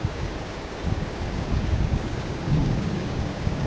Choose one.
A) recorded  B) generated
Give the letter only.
B